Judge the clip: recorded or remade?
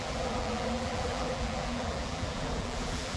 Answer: remade